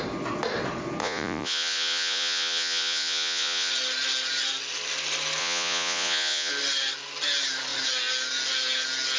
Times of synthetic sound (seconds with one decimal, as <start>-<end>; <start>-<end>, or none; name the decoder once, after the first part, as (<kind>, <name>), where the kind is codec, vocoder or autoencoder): 1.0-3.7 (vocoder, Vocos); 5.4-6.5